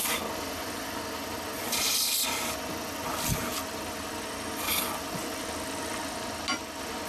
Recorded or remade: recorded